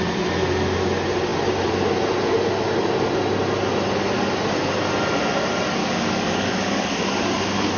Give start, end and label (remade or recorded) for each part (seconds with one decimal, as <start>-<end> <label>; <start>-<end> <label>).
0.0-5.8 recorded; 5.8-7.8 remade